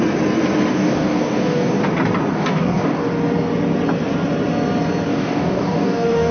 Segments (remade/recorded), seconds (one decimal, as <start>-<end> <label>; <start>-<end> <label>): 0.0-0.7 recorded; 0.7-1.8 remade; 1.8-2.3 recorded; 2.3-3.1 remade; 3.1-5.1 recorded; 5.1-6.3 remade